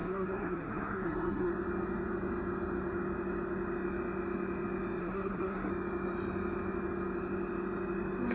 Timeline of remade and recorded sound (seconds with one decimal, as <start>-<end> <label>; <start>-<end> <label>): 0.0-1.5 remade; 1.5-5.0 recorded; 5.0-5.7 remade; 5.7-8.3 recorded